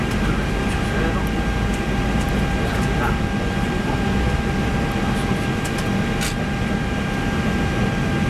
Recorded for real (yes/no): yes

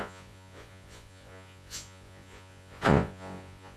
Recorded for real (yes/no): no